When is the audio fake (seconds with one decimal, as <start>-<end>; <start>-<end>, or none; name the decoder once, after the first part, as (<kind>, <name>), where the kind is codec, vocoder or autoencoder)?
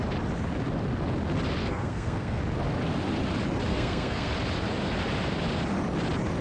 1.6-2.4 (codec, SNAC); 3.7-4.3